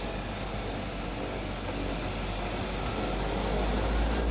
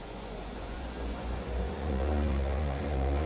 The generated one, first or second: second